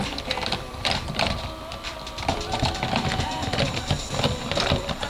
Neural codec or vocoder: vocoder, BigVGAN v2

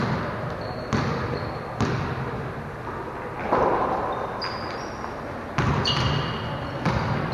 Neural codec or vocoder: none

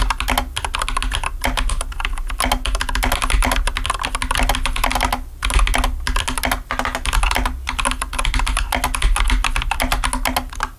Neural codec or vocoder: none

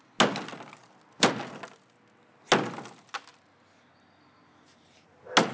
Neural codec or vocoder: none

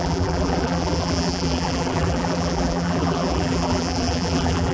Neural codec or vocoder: vocoder, BigVGAN v2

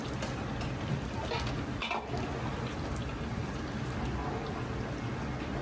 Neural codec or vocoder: none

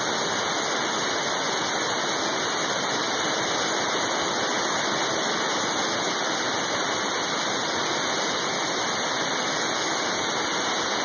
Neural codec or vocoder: none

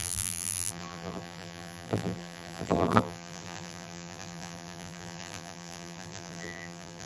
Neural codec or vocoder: vocoder, BigVGAN v2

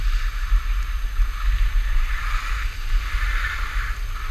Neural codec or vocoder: none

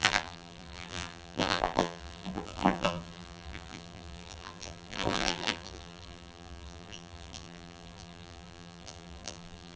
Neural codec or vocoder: vocoder, BigVGAN v2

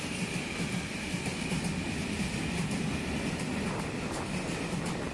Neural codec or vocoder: none